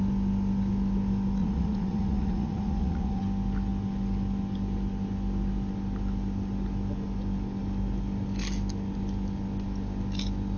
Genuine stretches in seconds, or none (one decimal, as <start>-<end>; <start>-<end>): 0.0-1.4; 3.2-10.6